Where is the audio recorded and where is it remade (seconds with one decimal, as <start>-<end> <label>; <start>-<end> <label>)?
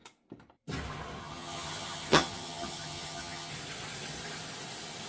0.0-1.2 recorded; 1.2-3.5 remade; 3.5-5.1 recorded